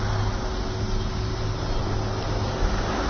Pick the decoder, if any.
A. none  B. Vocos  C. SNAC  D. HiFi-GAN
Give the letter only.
A